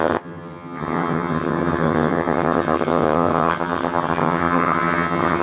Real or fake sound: fake